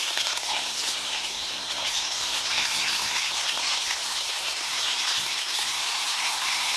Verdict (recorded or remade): remade